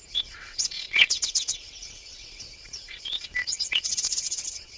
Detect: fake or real fake